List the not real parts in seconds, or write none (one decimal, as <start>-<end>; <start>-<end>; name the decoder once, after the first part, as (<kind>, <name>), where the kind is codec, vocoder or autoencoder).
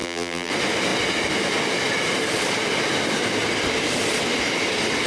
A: 0.0-0.5 (vocoder, BigVGAN v2)